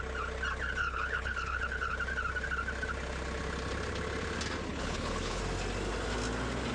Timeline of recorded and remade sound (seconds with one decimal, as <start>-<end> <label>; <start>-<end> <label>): 0.0-0.8 recorded; 0.8-1.9 remade; 1.9-4.7 recorded; 4.7-5.4 remade; 5.4-6.7 recorded